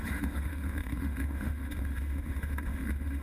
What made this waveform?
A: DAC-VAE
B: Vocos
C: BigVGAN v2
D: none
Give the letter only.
A